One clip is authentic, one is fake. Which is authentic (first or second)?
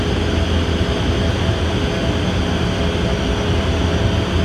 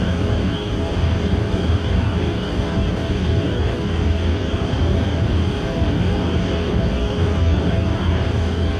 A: first